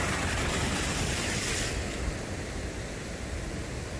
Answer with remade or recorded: recorded